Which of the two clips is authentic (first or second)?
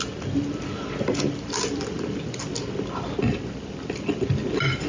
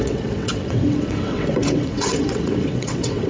first